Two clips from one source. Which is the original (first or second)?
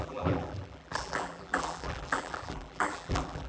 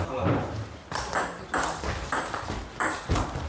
second